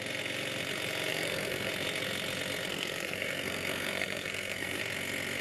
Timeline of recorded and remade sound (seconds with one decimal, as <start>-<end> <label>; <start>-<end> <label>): 0.0-1.1 recorded; 1.1-1.7 remade; 1.7-2.7 recorded; 2.7-4.8 remade; 4.8-5.4 recorded